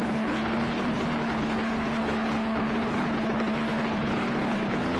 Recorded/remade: remade